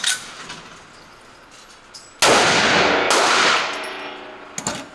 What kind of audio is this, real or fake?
real